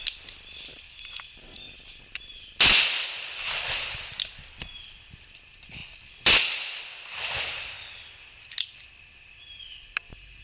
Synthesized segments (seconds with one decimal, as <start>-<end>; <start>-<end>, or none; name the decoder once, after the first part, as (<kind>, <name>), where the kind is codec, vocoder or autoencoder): none

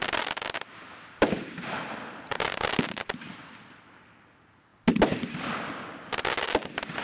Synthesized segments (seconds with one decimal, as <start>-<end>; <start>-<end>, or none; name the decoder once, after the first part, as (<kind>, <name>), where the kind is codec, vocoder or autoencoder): none

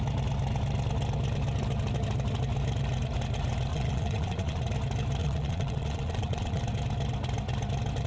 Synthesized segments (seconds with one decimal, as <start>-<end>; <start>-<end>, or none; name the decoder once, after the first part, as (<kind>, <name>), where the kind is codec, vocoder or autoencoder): 3.7-4.6 (vocoder, Vocos); 5.2-6.6